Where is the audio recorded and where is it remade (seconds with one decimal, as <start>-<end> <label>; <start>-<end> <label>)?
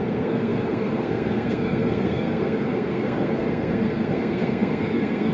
0.0-5.3 remade